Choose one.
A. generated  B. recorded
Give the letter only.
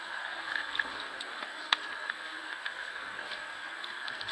A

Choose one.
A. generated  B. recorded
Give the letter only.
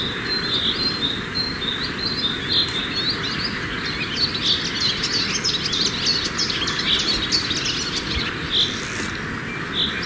B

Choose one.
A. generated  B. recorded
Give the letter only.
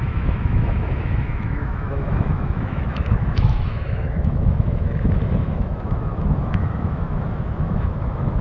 A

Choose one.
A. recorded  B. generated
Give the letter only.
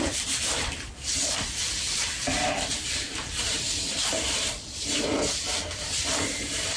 B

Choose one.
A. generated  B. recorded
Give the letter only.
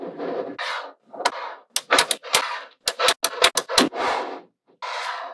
B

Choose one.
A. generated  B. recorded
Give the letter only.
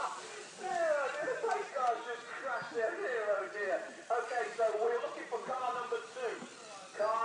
B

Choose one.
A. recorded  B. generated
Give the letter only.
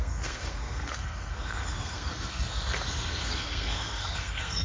B